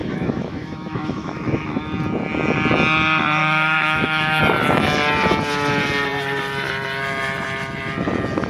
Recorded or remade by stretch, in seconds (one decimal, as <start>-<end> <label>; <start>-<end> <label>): 0.0-1.8 remade; 1.8-3.4 recorded; 3.4-4.4 remade; 4.4-8.5 recorded